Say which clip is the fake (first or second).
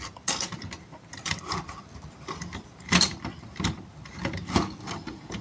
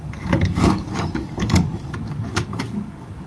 second